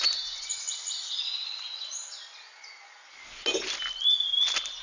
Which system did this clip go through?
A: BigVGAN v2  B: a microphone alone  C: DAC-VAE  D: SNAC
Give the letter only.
B